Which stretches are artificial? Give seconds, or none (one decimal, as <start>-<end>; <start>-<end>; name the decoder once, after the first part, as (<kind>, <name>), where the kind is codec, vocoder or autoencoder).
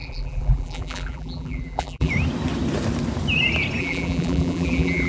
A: 0.0-2.1 (vocoder, BigVGAN v2); 3.8-5.1